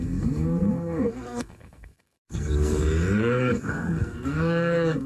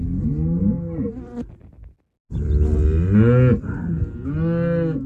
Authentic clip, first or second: second